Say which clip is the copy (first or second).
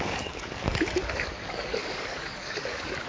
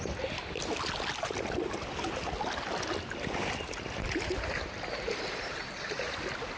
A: first